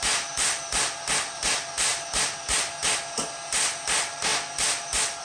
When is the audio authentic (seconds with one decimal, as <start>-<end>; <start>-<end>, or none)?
0.0-5.2

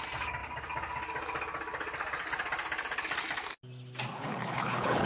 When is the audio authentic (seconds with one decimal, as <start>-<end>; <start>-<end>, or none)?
0.0-4.1

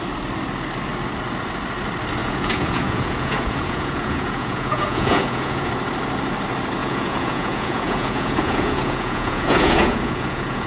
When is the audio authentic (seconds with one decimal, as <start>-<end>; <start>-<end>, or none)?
0.0-2.2; 5.7-6.8

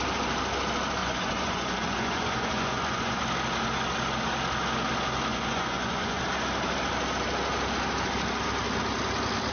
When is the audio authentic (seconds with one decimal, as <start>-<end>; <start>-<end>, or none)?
0.0-1.0; 3.2-5.3; 6.2-9.5

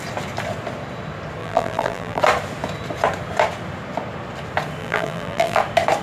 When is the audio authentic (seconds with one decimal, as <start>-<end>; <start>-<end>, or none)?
0.0-1.4; 2.2-4.8; 5.6-6.0

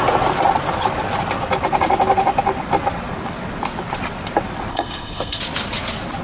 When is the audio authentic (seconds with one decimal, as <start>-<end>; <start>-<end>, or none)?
0.0-4.7; 5.4-6.2

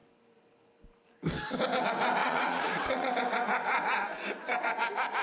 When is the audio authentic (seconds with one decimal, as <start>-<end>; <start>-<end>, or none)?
0.0-2.2; 3.1-5.2